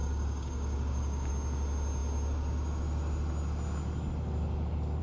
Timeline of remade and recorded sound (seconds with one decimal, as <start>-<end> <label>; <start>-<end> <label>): 0.0-1.3 remade; 1.3-5.0 recorded